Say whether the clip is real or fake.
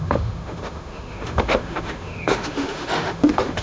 fake